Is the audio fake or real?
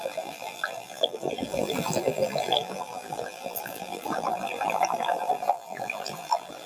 fake